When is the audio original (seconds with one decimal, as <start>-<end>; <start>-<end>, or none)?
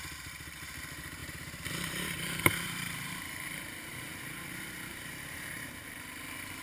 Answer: 0.0-1.2; 4.1-4.9; 5.7-6.6